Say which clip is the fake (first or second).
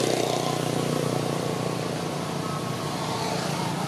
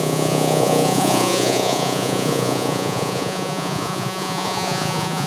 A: second